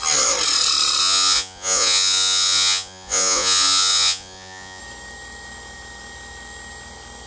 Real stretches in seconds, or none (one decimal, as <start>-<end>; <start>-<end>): 0.0-1.0; 4.8-7.3